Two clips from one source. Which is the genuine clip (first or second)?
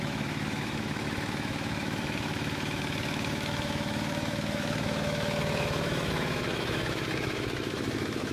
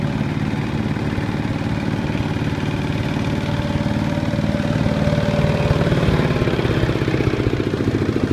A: second